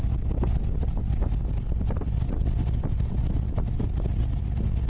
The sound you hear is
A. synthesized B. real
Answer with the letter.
B